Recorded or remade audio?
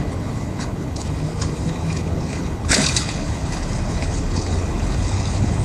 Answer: remade